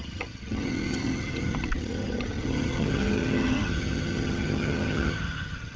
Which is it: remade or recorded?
remade